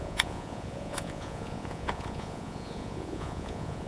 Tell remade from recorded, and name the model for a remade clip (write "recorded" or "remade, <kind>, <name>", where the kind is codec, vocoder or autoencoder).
remade, vocoder, Vocos